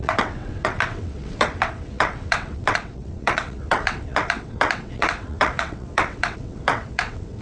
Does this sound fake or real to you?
fake